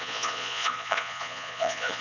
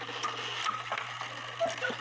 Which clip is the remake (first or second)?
first